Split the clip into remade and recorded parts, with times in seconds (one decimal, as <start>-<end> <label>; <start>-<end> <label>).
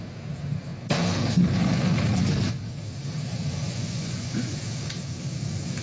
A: 0.0-3.6 recorded; 3.6-4.6 remade; 4.6-5.8 recorded